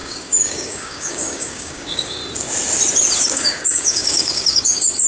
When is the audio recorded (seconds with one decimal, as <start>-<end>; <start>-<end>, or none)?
2.2-3.2